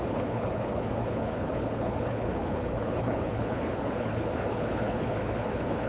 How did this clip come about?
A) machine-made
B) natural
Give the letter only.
A